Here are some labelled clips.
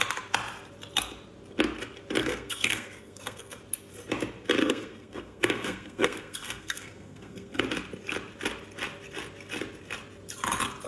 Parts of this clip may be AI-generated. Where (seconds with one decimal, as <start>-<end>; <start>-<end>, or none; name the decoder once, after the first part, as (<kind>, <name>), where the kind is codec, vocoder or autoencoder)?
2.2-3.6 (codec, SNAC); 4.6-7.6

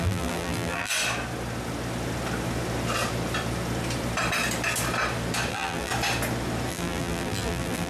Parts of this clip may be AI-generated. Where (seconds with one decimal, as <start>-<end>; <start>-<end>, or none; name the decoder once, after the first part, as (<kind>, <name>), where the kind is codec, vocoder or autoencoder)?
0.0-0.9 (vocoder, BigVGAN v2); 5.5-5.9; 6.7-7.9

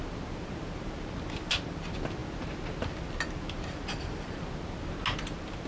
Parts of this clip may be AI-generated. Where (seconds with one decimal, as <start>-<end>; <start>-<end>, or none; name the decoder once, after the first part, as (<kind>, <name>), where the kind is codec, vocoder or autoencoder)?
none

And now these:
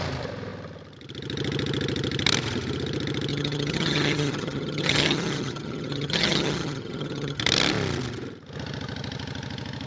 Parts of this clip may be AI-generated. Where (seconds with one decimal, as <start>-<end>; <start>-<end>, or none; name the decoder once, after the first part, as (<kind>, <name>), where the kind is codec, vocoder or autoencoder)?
3.3-7.4 (vocoder, HiFi-GAN)

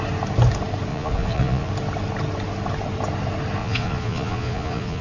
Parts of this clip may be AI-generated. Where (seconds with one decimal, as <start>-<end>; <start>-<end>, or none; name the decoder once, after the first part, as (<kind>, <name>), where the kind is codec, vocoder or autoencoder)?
0.9-1.7 (vocoder, Vocos); 3.6-5.0

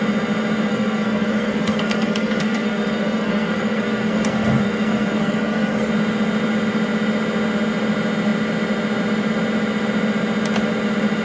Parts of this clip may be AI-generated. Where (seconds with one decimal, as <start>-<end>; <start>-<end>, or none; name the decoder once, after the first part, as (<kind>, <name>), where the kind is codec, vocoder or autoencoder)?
0.7-5.9 (codec, SNAC)